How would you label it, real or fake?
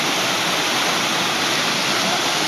real